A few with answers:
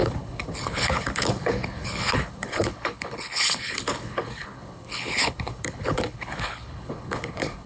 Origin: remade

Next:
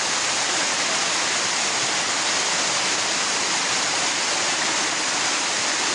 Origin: recorded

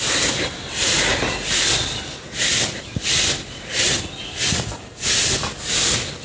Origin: recorded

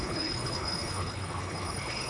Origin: remade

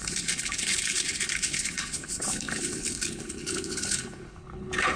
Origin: remade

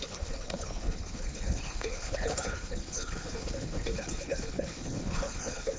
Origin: remade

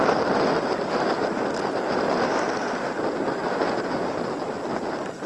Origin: recorded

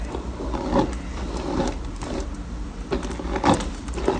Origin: recorded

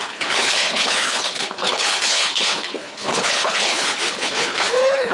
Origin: remade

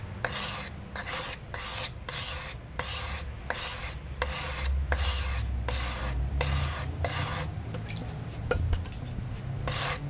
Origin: recorded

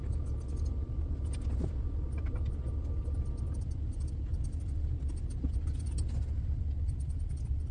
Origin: recorded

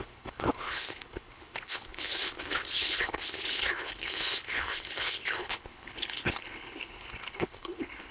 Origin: remade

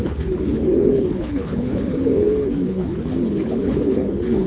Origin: remade